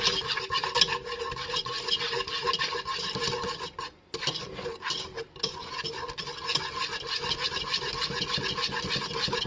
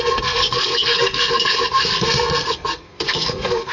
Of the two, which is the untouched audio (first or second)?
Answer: first